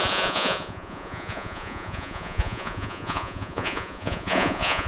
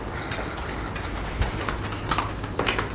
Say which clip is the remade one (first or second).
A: first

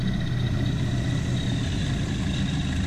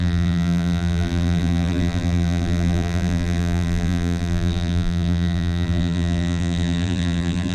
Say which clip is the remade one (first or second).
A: second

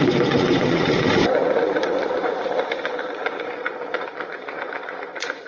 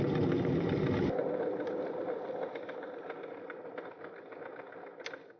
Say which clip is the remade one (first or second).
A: first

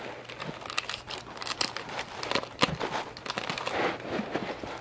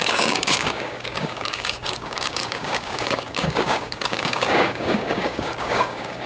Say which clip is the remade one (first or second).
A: second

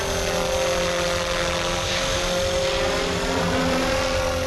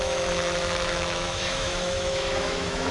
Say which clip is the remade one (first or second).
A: second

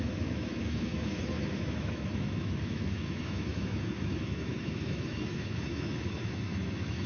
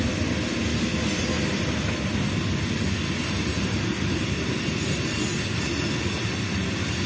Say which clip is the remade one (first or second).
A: first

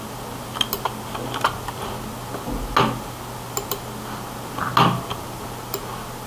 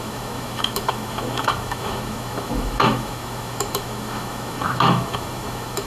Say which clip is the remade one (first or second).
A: second